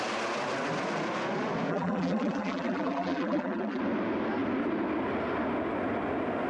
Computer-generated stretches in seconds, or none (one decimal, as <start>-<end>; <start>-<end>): 1.7-3.8

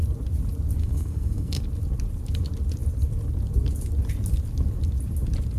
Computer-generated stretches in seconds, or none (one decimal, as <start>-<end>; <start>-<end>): 0.8-1.6

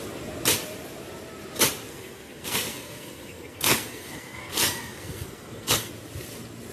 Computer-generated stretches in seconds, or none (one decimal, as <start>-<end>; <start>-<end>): 1.9-5.9

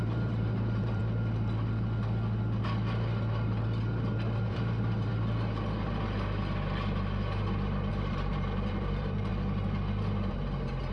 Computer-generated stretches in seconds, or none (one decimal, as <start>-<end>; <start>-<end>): 0.0-1.0; 4.5-5.1; 7.9-9.3; 10.3-10.9

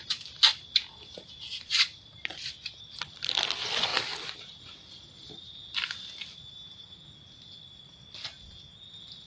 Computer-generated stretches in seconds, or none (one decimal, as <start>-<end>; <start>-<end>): none